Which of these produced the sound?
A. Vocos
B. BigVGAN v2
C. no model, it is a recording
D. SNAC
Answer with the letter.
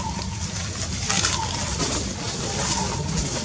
C